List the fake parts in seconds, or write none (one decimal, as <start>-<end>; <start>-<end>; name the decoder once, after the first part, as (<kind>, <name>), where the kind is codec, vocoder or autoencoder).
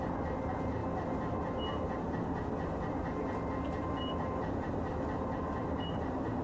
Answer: none